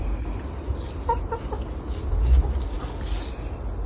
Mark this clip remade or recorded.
recorded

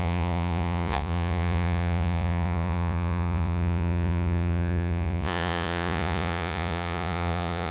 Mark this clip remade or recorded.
remade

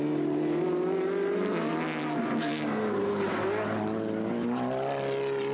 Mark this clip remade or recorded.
recorded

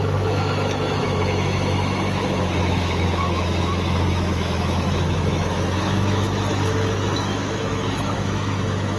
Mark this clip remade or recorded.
remade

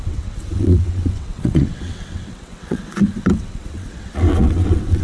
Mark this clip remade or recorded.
remade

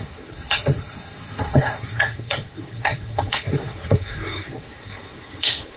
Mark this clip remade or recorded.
remade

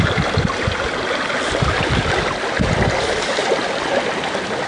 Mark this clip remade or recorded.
recorded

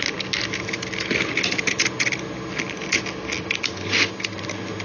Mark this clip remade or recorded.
recorded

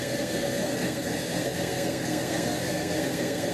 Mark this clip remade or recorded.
remade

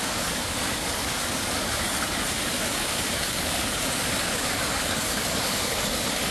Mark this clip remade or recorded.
remade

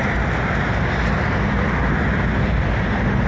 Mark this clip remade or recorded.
recorded